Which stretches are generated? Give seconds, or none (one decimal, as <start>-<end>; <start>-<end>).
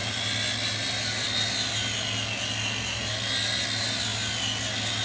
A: none